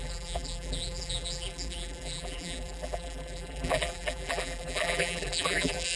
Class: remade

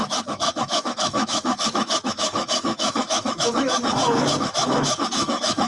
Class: remade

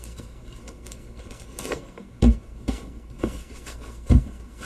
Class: remade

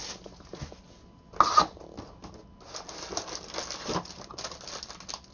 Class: recorded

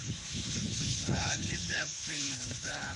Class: remade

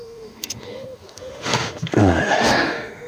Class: remade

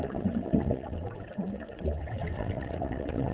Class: remade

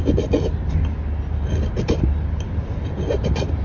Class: recorded